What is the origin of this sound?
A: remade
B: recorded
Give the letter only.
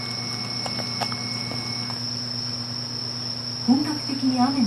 B